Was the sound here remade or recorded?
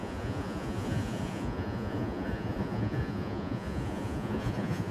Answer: remade